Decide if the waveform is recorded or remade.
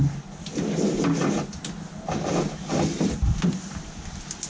recorded